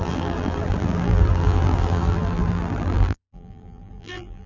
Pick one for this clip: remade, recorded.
remade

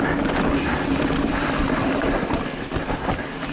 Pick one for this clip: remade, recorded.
recorded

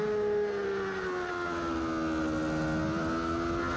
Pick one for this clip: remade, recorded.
recorded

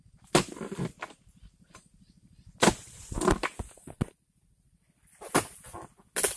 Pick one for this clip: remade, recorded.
recorded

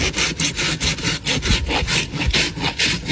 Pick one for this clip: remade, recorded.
recorded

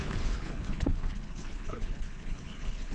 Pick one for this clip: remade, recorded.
remade